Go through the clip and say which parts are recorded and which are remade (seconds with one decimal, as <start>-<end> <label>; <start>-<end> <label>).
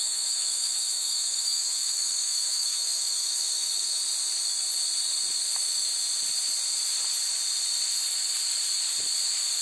0.0-4.0 remade; 4.0-5.5 recorded; 5.5-5.9 remade; 5.9-9.6 recorded